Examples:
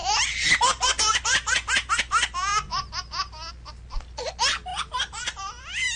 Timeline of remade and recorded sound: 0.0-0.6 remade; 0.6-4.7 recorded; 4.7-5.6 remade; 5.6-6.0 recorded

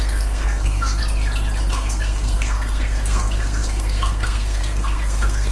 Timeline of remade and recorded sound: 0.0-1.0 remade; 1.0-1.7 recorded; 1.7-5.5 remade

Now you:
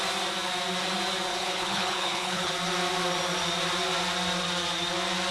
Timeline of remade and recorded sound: 0.0-1.3 recorded; 1.3-2.5 remade; 2.5-5.3 recorded

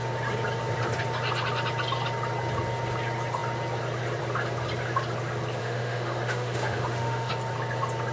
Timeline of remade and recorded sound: 0.0-5.6 recorded; 5.6-7.3 remade; 7.3-8.1 recorded

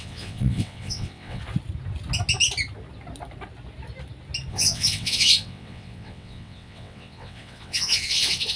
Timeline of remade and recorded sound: 0.0-1.4 remade; 1.4-4.5 recorded; 4.5-8.6 remade

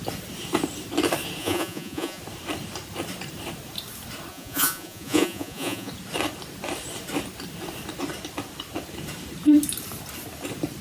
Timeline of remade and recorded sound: 0.0-1.4 recorded; 1.4-2.2 remade; 2.2-4.3 recorded; 4.3-5.9 remade; 5.9-10.8 recorded